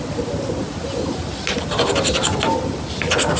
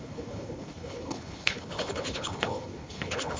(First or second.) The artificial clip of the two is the second